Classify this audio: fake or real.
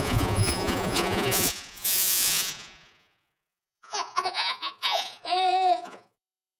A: fake